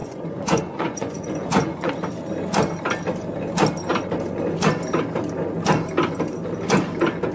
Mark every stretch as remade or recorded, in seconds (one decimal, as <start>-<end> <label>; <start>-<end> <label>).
0.0-1.9 remade; 1.9-7.3 recorded